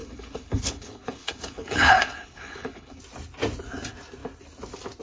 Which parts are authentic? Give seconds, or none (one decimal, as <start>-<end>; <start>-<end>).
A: 3.0-5.0